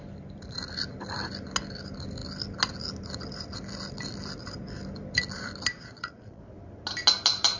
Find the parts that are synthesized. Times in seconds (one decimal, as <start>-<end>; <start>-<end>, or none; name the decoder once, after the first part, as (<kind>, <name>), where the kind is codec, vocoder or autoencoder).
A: 5.7-6.4 (vocoder, Vocos)